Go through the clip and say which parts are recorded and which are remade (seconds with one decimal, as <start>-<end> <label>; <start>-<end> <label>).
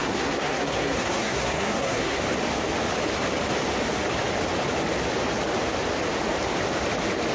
0.0-2.2 remade; 2.2-7.3 recorded